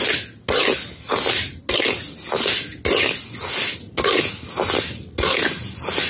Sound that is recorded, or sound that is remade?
recorded